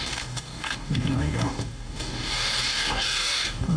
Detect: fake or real fake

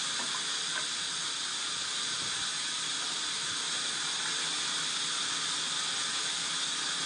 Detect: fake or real real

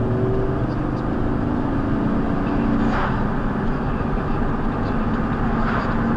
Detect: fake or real real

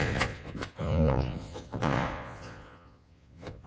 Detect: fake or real fake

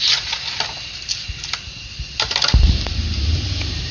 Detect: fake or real real